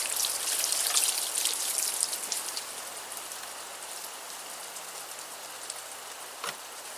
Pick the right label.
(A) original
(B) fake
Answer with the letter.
A